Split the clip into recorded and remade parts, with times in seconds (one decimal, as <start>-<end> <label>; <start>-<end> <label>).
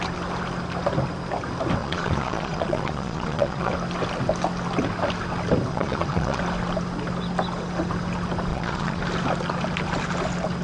0.0-1.8 recorded; 1.8-3.7 remade; 3.7-5.7 recorded; 5.7-6.4 remade; 6.4-8.5 recorded; 8.5-9.0 remade; 9.0-10.6 recorded